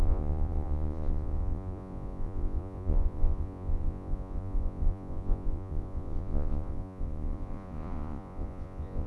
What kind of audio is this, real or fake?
fake